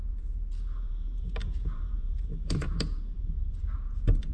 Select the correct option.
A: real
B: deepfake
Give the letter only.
B